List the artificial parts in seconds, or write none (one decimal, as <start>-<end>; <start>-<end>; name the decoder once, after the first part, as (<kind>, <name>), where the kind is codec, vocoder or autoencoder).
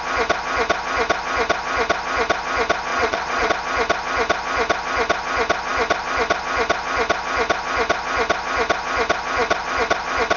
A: 2.9-3.5 (vocoder, Vocos)